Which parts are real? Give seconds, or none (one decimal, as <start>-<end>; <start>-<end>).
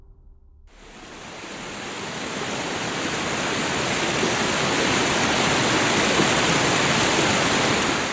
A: 0.0-8.1